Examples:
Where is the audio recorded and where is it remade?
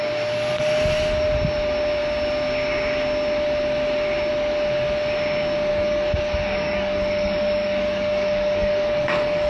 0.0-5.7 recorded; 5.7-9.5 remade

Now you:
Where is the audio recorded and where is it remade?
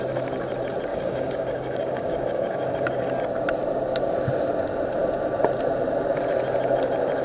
0.0-0.9 recorded; 0.9-3.1 remade; 3.1-7.2 recorded